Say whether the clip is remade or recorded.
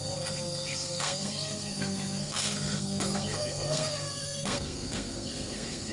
remade